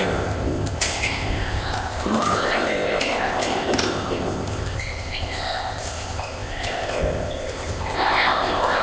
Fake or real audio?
fake